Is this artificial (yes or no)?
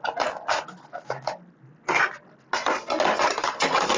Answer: no